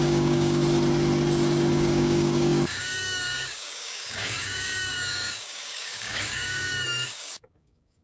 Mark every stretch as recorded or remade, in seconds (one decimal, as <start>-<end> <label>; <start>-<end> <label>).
0.0-0.6 remade; 0.6-1.7 recorded; 1.7-8.0 remade